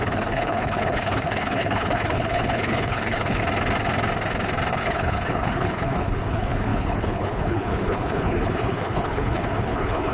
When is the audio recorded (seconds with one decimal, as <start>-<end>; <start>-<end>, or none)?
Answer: 3.4-4.7